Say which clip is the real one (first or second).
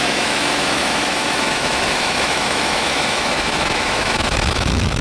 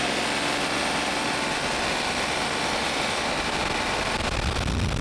second